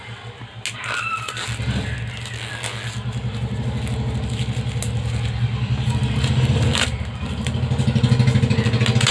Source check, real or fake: real